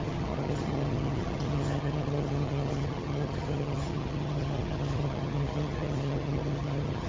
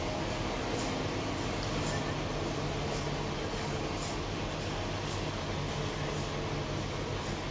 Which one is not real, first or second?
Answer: first